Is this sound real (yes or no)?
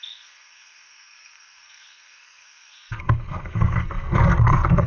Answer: no